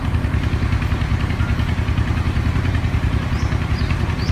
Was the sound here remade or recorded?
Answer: remade